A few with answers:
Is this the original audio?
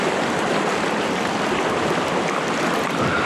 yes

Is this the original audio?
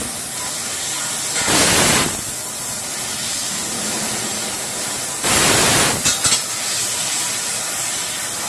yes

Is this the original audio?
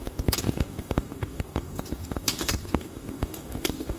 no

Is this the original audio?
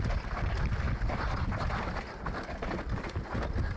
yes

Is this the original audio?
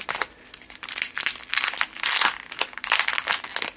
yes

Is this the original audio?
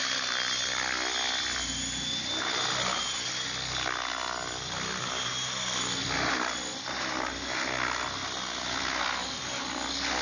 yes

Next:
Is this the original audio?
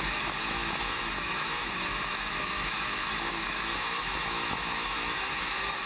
no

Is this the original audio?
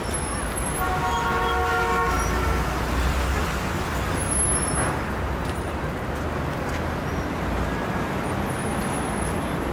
yes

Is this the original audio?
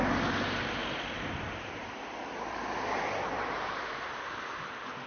yes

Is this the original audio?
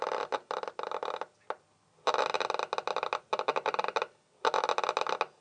yes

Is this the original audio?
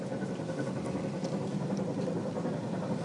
yes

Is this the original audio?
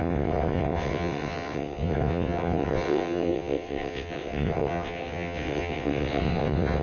no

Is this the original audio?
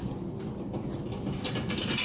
yes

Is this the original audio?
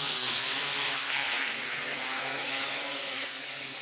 no